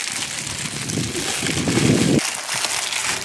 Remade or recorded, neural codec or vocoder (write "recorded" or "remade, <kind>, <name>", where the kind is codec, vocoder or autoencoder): recorded